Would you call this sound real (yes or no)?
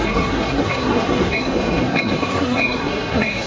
no